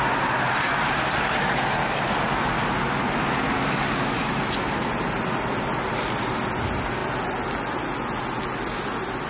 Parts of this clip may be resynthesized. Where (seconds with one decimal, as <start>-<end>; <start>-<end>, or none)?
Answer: none